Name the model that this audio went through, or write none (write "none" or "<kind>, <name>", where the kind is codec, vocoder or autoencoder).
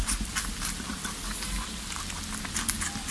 none